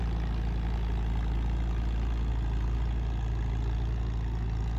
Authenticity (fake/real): real